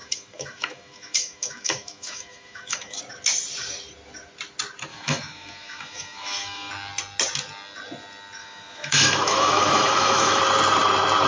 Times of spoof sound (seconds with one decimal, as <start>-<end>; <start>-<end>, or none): 0.0-3.0; 4.9-6.7; 8.4-10.4

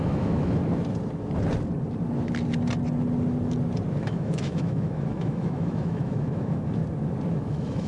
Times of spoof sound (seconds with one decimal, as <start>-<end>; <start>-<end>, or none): 0.0-0.6; 4.0-6.8; 7.3-7.9

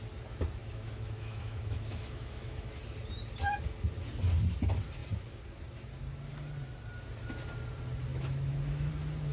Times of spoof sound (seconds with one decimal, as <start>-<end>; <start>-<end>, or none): 0.6-2.8; 8.1-8.9

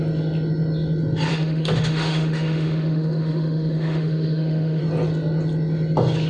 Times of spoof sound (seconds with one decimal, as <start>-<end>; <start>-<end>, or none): 1.3-4.8

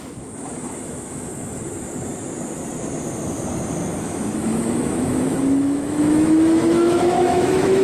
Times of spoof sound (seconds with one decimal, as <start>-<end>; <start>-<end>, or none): 0.0-1.3; 4.0-7.8

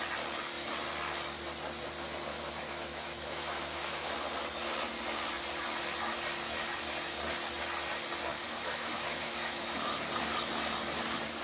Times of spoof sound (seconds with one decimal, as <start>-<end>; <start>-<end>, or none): 2.3-4.1; 8.3-9.9

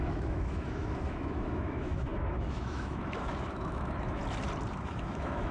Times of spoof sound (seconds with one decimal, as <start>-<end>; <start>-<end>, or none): 0.0-4.2; 4.7-5.5

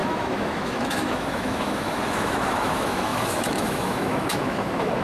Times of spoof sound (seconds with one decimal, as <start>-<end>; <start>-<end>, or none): 0.0-5.0